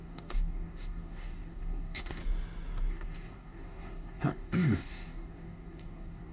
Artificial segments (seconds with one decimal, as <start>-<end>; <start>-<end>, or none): 0.0-2.2; 2.9-6.3